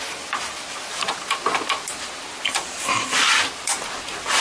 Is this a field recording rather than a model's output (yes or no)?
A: yes